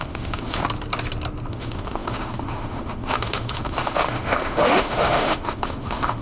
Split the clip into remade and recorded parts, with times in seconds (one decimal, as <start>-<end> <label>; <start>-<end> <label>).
0.0-0.6 remade; 0.6-1.5 recorded; 1.5-6.2 remade